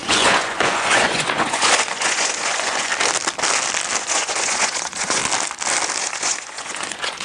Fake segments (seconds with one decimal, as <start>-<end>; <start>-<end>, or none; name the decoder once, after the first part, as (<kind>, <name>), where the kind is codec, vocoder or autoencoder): 0.0-2.9 (vocoder, Vocos); 4.0-5.2; 6.0-7.2

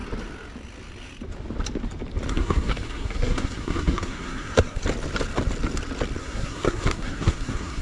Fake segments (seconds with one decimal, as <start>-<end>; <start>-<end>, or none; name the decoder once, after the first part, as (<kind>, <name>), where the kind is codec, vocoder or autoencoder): 2.3-4.8 (codec, SNAC); 6.2-7.8

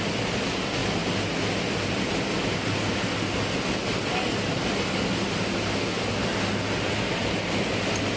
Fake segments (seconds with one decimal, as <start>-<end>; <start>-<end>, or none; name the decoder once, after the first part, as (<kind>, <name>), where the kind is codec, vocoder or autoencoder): none

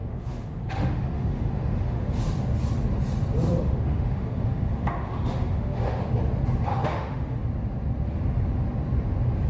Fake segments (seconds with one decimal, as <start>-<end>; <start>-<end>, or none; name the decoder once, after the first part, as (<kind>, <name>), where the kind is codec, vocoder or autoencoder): 0.0-2.2 (autoencoder, DAC-VAE); 3.6-6.0; 6.7-7.4

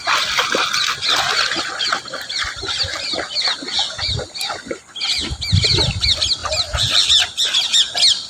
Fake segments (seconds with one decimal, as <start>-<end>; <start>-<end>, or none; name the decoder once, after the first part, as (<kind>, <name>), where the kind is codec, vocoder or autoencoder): none

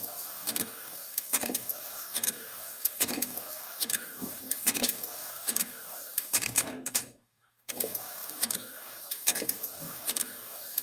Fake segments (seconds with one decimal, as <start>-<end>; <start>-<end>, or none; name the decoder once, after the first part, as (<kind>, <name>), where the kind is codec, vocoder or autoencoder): 0.0-10.8 (codec, DAC)

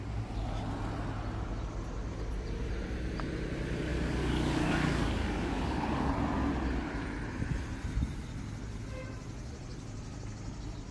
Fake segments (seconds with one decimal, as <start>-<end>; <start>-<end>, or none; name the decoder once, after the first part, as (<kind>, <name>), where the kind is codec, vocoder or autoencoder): 3.9-6.1 (codec, DAC)

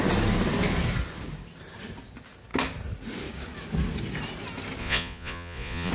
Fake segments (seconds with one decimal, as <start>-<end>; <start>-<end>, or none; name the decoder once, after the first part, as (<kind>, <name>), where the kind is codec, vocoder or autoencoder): 4.8-5.9 (vocoder, Vocos)